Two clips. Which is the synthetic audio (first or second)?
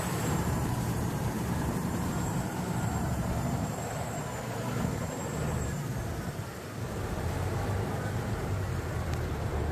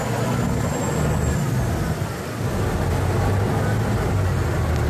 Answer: first